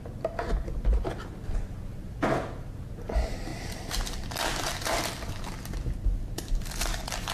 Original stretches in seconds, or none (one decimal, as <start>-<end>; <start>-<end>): 0.0-7.3